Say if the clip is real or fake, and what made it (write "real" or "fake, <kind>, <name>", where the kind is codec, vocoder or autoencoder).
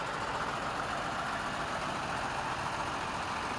real